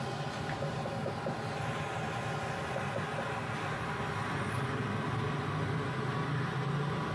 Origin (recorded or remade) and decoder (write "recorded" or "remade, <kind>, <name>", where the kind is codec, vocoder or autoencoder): recorded